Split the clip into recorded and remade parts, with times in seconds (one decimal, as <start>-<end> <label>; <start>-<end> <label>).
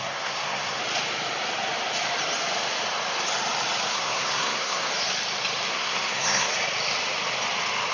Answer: 0.0-0.8 remade; 0.8-3.9 recorded; 3.9-4.9 remade; 4.9-5.7 recorded; 5.7-6.5 remade; 6.5-7.9 recorded